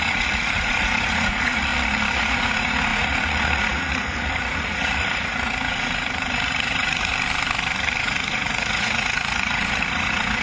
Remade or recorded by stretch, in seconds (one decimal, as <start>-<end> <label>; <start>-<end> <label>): 0.0-1.7 remade; 1.7-2.2 recorded; 2.2-7.1 remade; 7.1-8.0 recorded; 8.0-10.4 remade